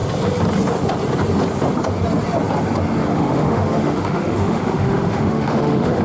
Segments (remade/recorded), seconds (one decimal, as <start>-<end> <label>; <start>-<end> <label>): 0.0-3.0 recorded; 3.0-6.0 remade

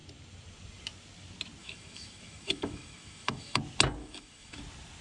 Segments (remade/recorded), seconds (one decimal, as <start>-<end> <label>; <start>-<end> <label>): 0.0-1.6 recorded; 1.6-3.6 remade; 3.6-4.0 recorded; 4.0-4.6 remade; 4.6-5.0 recorded

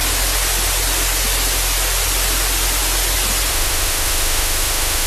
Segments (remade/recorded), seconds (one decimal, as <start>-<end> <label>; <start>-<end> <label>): 0.0-3.5 recorded; 3.5-5.1 remade

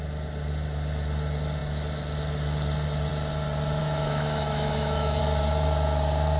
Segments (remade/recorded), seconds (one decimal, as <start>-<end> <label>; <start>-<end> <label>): 0.0-3.8 recorded; 3.8-5.2 remade; 5.2-6.4 recorded

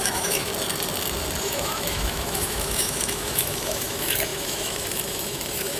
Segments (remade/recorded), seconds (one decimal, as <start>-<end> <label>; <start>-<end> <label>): 0.0-0.5 remade; 0.5-1.4 recorded; 1.4-5.8 remade

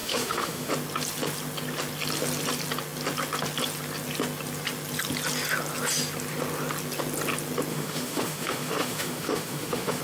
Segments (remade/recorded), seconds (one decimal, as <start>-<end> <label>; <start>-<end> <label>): 0.0-0.7 remade; 0.7-7.7 recorded; 7.7-10.0 remade

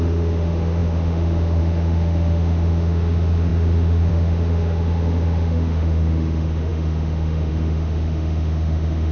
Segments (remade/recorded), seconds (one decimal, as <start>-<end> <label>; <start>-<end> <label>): 0.0-9.1 remade

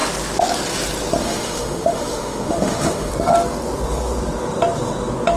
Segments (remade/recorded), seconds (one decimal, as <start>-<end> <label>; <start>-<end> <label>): 0.0-1.2 recorded; 1.2-3.1 remade; 3.1-5.4 recorded